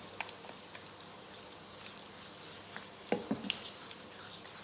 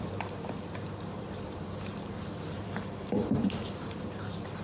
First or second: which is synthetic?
second